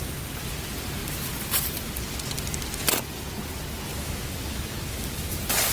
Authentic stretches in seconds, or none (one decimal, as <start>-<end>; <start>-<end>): 0.0-3.9; 5.3-5.7

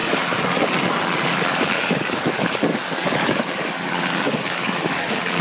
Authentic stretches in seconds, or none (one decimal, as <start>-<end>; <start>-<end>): 0.0-1.3

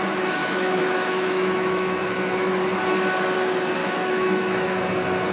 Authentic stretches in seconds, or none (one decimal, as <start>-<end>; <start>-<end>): 0.0-0.4; 2.6-3.8; 4.8-5.3

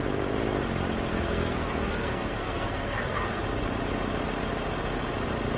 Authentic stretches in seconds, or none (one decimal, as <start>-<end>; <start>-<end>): 0.0-1.1; 3.4-5.6

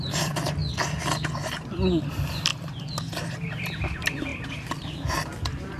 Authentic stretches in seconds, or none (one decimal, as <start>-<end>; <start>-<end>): 0.6-2.0; 2.5-3.5

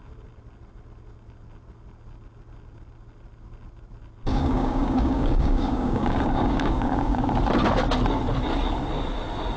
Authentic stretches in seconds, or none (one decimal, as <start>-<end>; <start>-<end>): 0.0-4.3; 7.3-9.6

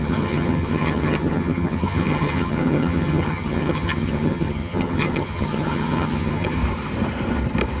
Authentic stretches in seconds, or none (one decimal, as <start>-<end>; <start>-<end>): 6.6-7.8

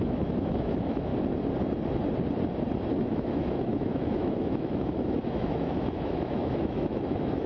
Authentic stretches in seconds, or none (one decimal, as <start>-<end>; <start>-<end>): 1.1-3.0